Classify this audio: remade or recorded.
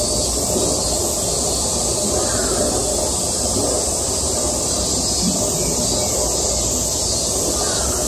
recorded